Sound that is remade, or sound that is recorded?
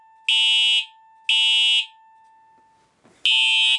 recorded